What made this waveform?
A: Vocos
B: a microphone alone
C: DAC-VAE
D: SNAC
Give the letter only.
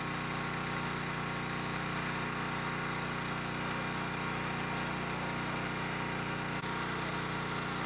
B